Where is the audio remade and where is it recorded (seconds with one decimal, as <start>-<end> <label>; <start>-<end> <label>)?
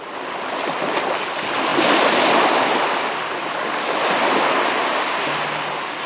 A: 0.0-6.1 recorded